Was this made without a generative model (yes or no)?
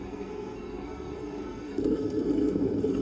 no